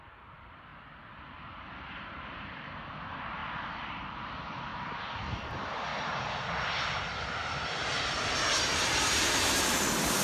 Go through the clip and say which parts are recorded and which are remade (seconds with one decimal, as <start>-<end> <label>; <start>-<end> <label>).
0.0-0.7 remade; 0.7-1.9 recorded; 1.9-5.9 remade; 5.9-7.5 recorded; 7.5-10.2 remade